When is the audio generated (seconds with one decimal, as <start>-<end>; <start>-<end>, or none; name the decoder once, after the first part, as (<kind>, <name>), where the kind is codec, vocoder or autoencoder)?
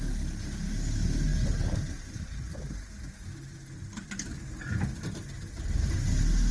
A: none